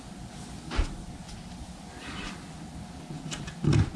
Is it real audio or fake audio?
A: real